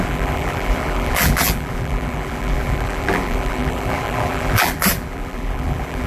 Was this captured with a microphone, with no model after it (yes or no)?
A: no